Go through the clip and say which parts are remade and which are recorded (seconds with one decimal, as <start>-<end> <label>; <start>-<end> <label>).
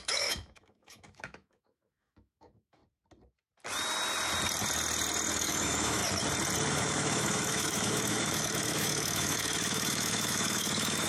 0.0-2.8 remade; 2.8-5.3 recorded; 5.3-6.0 remade; 6.0-6.7 recorded; 6.7-11.1 remade